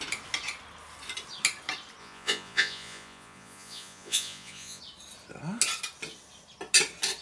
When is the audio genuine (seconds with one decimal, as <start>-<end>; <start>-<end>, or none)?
0.0-2.0; 4.8-7.2

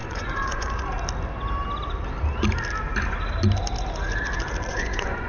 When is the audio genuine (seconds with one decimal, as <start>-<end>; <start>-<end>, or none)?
0.9-4.7

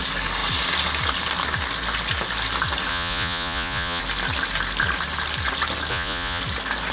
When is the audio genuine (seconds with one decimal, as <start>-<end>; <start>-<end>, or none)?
0.0-2.9; 4.0-5.9; 6.4-6.9

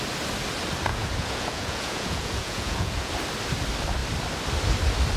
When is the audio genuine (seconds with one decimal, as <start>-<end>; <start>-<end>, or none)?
0.0-0.9; 3.1-5.2

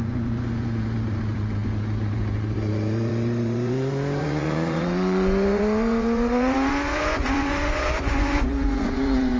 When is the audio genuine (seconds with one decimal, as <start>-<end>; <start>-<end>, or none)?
none